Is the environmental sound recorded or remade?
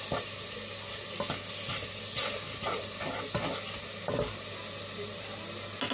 recorded